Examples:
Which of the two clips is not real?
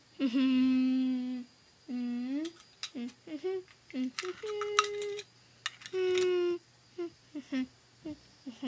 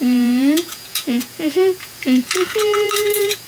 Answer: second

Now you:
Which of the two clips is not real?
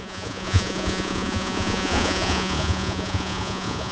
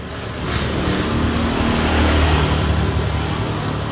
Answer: first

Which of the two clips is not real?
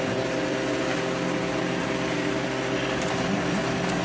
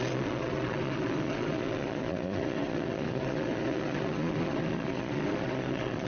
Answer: second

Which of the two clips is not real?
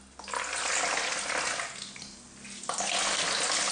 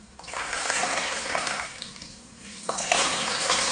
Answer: second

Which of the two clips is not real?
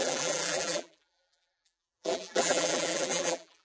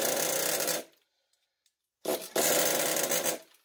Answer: first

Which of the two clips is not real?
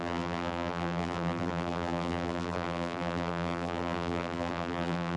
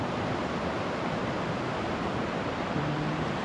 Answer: first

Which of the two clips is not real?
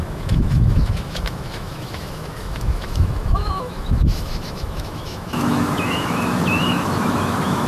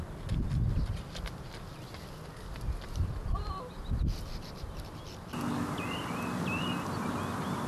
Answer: first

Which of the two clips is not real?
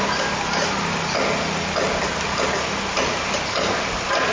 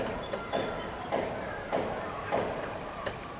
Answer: second